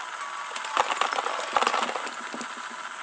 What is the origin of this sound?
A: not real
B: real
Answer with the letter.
B